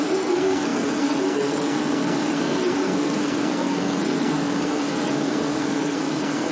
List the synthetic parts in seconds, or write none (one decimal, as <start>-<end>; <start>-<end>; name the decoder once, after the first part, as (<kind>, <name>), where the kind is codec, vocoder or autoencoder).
0.0-6.5 (codec, SNAC)